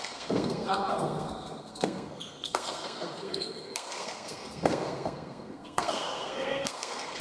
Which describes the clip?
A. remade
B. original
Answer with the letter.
A